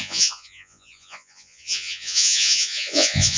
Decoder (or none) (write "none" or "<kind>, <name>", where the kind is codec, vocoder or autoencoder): vocoder, Vocos